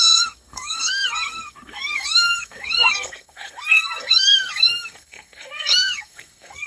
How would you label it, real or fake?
fake